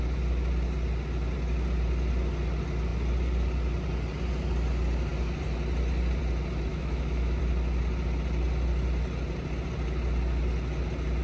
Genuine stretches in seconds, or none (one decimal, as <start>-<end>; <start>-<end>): 0.0-6.7; 7.4-11.2